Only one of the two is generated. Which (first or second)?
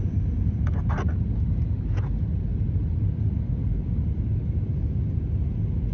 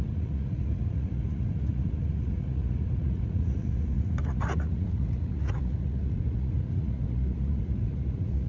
second